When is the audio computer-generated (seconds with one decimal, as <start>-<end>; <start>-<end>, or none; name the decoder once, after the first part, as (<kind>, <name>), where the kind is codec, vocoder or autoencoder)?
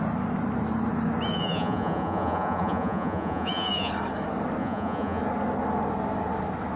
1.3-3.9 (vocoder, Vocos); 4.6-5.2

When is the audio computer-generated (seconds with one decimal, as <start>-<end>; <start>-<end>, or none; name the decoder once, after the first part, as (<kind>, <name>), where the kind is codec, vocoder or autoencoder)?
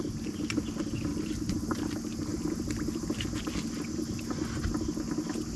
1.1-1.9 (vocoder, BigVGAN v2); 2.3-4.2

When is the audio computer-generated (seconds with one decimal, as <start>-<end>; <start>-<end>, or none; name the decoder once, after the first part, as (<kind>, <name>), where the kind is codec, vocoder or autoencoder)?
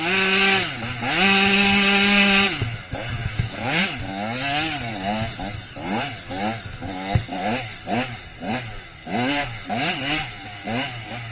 3.2-3.8 (vocoder, Vocos)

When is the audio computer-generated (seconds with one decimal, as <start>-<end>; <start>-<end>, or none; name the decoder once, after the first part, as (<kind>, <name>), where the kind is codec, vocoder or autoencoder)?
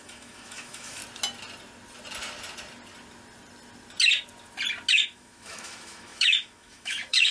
0.0-1.0 (autoencoder, DAC-VAE); 4.9-7.3